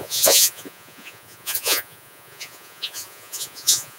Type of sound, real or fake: fake